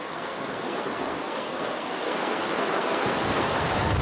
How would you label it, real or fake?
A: fake